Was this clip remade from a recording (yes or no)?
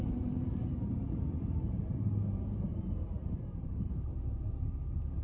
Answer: yes